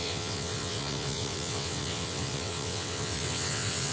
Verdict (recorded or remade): remade